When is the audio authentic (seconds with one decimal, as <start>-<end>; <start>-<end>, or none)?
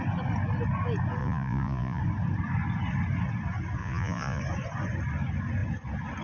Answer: 0.0-1.2; 2.0-3.8; 4.4-6.2